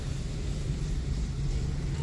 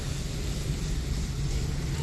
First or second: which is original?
first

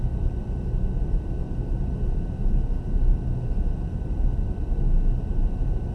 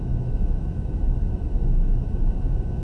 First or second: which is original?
first